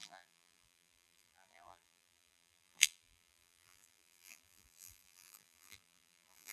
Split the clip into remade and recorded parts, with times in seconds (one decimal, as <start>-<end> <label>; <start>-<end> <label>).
0.0-6.5 remade

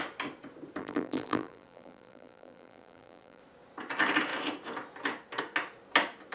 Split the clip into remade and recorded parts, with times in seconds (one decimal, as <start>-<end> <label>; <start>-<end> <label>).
0.0-0.8 recorded; 0.8-3.4 remade; 3.4-6.3 recorded

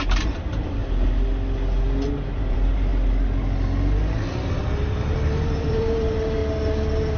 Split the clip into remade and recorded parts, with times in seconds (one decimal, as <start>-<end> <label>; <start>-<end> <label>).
0.0-0.8 remade; 0.8-2.5 recorded; 2.5-2.9 remade; 2.9-4.7 recorded; 4.7-6.4 remade; 6.4-7.2 recorded

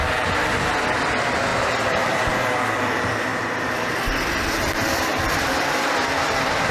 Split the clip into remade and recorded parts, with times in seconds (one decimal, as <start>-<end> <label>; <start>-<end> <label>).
0.0-1.5 recorded; 1.5-2.5 remade; 2.5-5.1 recorded; 5.1-6.7 remade

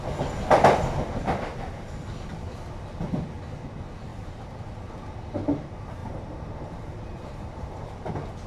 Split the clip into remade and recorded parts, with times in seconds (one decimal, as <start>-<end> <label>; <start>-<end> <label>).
0.0-4.1 recorded; 4.1-4.7 remade; 4.7-6.0 recorded; 6.0-8.1 remade; 8.1-8.5 recorded

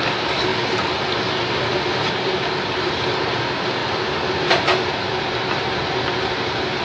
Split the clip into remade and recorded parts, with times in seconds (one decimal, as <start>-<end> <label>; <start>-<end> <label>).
0.0-6.8 recorded